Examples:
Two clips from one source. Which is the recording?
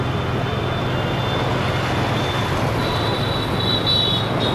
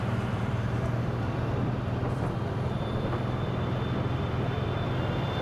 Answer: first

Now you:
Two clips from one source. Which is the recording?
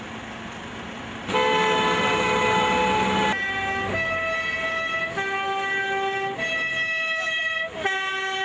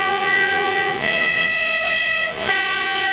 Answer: first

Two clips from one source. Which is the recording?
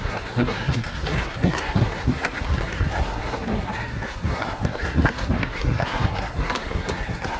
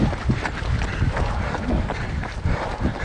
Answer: second